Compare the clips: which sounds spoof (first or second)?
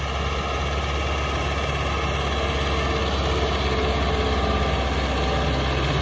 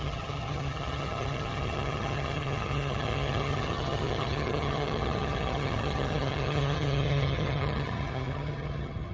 second